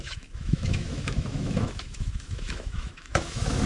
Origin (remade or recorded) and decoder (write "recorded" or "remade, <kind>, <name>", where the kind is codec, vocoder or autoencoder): remade, autoencoder, DAC-VAE